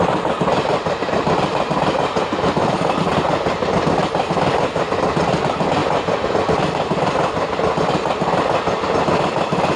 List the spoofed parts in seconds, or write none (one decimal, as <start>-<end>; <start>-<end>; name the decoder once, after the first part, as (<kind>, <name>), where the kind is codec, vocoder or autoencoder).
1.5-4.2 (vocoder, BigVGAN v2); 5.8-6.5